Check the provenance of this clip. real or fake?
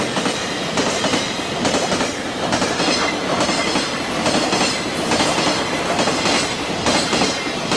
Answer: real